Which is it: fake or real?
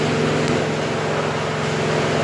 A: real